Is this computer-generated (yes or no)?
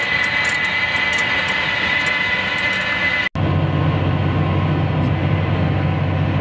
no